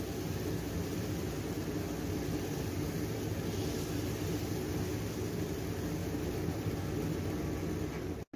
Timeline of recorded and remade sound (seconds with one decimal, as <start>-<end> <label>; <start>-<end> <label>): 0.0-6.0 recorded; 6.0-6.6 remade; 6.6-8.4 recorded